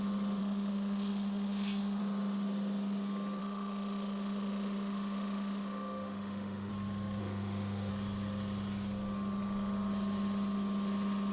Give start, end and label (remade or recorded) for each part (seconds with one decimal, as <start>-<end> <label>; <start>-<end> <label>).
0.0-0.4 recorded; 0.4-2.0 remade; 2.0-3.4 recorded; 3.4-6.7 remade; 6.7-7.2 recorded; 7.2-7.9 remade; 7.9-11.3 recorded